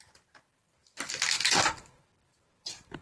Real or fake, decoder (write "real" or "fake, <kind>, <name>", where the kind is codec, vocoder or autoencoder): real